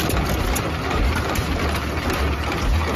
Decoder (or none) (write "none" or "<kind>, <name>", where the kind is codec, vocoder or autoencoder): none